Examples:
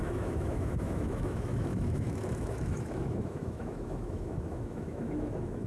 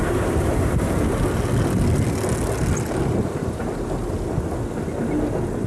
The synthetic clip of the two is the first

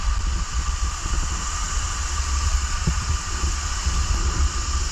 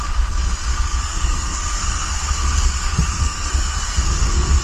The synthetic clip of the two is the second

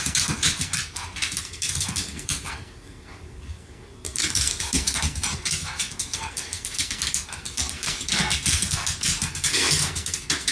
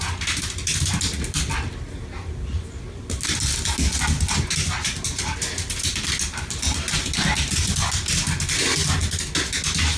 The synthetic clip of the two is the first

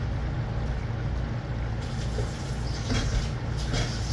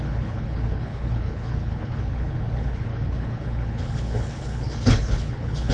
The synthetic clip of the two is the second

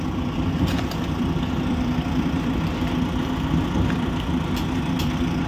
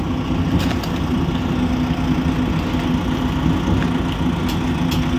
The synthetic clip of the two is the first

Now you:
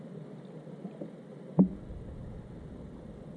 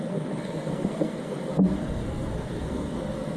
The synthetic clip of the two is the second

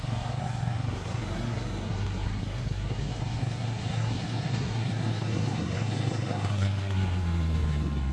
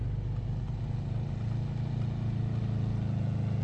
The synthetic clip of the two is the first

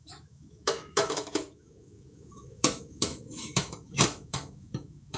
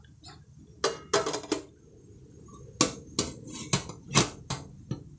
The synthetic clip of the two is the first